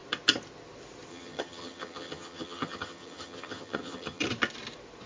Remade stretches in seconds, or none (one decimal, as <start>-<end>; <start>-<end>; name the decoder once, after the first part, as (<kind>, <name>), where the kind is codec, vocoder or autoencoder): 1.1-4.2 (vocoder, HiFi-GAN)